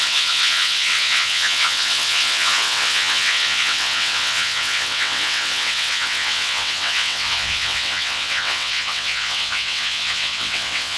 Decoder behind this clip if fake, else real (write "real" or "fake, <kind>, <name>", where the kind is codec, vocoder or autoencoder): fake, vocoder, WaveNeXt